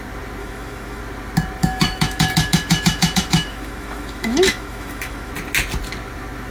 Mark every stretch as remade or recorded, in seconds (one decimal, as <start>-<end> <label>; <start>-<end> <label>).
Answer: 0.0-0.4 recorded; 0.4-1.0 remade; 1.0-1.6 recorded; 1.6-5.3 remade; 5.3-6.5 recorded